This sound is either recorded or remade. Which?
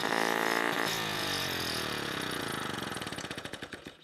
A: remade